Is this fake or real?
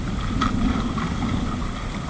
real